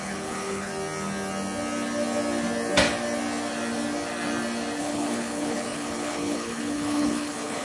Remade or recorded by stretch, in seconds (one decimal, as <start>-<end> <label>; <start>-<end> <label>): 0.0-0.7 remade; 0.7-4.8 recorded; 4.8-7.6 remade